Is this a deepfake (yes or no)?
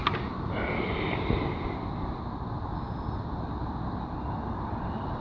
no